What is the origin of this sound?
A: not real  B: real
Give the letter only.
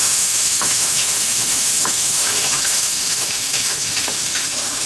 A